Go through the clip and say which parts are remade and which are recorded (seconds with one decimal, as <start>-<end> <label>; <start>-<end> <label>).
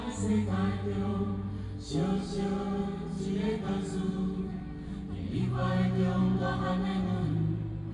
0.0-7.9 recorded